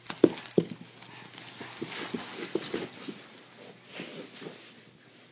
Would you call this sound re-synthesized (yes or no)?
no